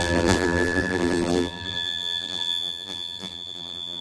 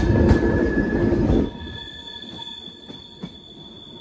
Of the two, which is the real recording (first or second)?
second